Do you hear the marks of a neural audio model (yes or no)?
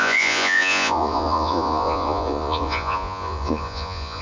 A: yes